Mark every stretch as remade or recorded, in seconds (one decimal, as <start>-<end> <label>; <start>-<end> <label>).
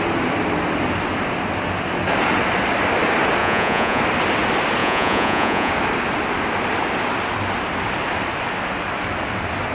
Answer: 0.0-3.4 recorded; 3.4-4.0 remade; 4.0-4.8 recorded; 4.8-5.7 remade; 5.7-9.7 recorded